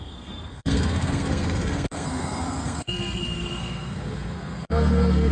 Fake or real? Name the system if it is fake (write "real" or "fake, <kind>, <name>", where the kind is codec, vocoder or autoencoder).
fake, codec, SNAC